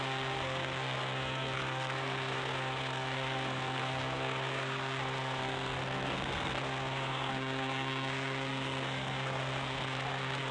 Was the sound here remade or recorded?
remade